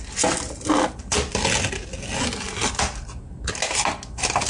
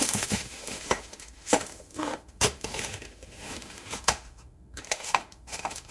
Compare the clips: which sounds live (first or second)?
first